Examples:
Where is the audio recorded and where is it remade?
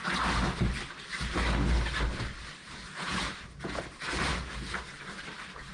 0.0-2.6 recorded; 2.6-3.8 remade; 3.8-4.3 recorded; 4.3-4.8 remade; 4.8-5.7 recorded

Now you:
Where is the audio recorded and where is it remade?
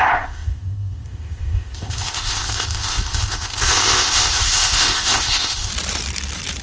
0.0-5.7 remade; 5.7-6.6 recorded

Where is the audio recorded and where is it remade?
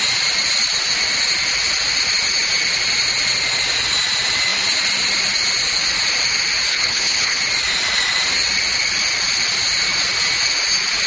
0.0-6.7 recorded; 6.7-7.4 remade; 7.4-11.1 recorded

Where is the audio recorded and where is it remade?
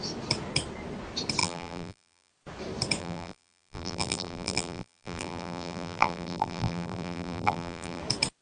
0.0-1.4 recorded; 1.4-2.3 remade; 2.3-3.0 recorded; 3.0-8.0 remade; 8.0-8.4 recorded